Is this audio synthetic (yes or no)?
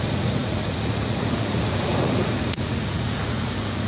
yes